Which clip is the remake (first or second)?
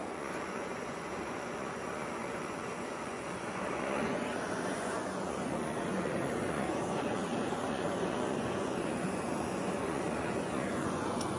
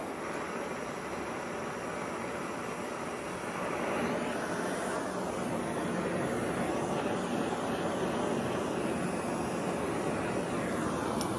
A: first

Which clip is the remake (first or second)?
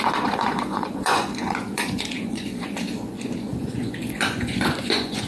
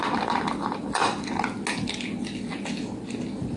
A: first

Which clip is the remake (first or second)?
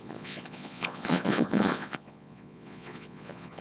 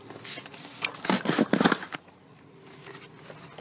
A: first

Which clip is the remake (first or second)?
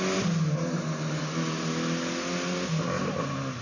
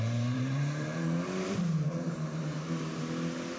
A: second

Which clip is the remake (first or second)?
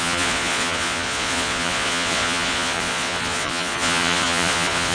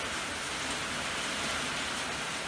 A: first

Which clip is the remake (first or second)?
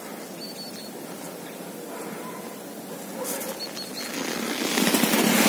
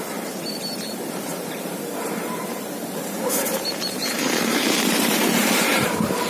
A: second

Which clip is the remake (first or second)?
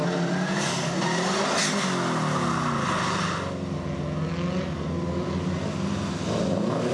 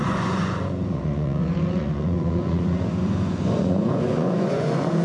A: second